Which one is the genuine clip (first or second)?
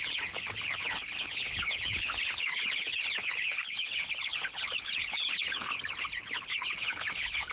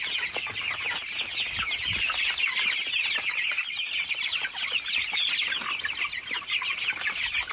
second